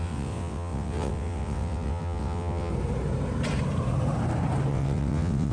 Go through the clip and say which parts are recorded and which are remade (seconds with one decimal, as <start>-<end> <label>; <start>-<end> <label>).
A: 0.0-2.7 remade; 2.7-4.7 recorded; 4.7-5.5 remade